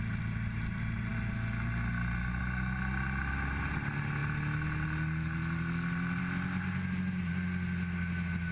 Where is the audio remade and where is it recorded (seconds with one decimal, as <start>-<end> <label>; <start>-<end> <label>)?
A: 0.0-8.5 recorded